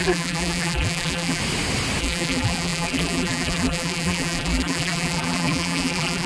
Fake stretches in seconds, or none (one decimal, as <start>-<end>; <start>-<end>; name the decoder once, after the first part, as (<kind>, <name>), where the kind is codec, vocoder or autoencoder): 0.0-1.4 (vocoder, BigVGAN v2); 2.0-6.3